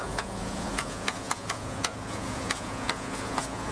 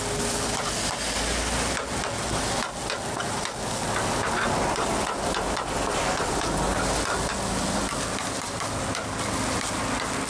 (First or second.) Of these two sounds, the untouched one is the second